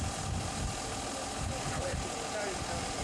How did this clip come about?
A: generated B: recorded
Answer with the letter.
B